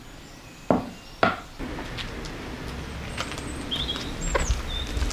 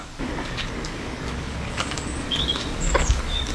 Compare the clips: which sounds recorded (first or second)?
first